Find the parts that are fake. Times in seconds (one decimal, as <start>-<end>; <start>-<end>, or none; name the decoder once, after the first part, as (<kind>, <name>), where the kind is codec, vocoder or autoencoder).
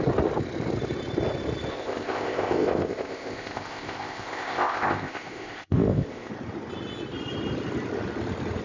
1.7-6.3 (codec, ZipCodec)